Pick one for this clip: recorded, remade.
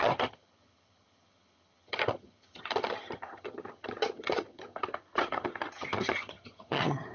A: remade